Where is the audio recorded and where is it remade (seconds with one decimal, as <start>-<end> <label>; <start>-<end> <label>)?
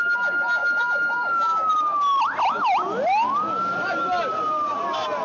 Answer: 0.0-0.6 recorded; 0.6-1.7 remade; 1.7-5.2 recorded